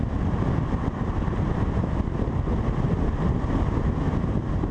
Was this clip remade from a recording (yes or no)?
no